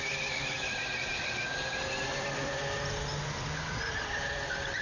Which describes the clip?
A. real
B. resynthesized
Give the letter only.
A